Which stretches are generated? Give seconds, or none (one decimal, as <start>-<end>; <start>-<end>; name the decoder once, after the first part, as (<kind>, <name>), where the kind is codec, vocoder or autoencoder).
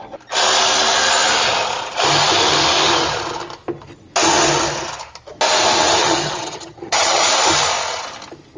6.0-7.3 (vocoder, HiFi-GAN)